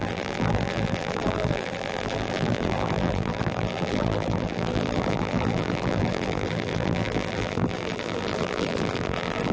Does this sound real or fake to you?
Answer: fake